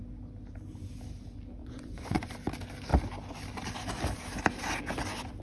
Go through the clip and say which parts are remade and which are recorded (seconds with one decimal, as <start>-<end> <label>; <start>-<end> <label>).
0.0-1.6 recorded; 1.6-2.3 remade; 2.3-5.4 recorded